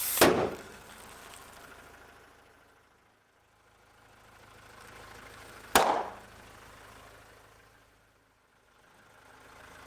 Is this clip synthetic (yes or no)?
no